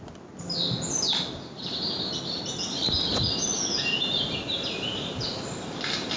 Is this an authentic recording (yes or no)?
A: yes